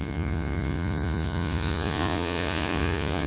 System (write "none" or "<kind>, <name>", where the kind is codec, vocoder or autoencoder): vocoder, Vocos